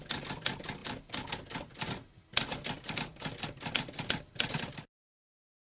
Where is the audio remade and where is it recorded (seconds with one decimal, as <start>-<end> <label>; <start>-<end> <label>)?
0.0-5.6 recorded